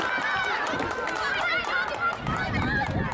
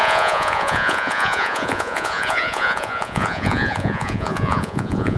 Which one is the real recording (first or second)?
first